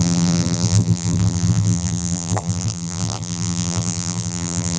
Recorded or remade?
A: remade